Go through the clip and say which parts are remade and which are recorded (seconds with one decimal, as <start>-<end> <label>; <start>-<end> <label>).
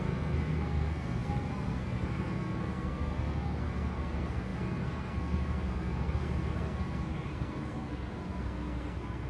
0.0-9.3 remade